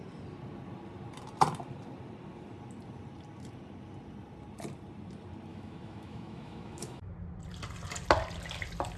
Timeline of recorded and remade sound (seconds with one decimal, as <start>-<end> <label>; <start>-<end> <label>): 0.0-5.5 recorded; 5.5-7.1 remade; 7.1-9.0 recorded